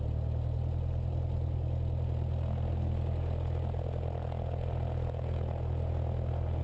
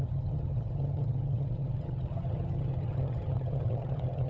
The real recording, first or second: first